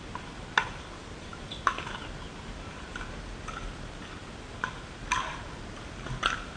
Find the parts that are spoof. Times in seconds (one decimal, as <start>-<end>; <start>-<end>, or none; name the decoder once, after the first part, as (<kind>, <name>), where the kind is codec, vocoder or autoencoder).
4.0-5.0 (vocoder, BigVGAN v2)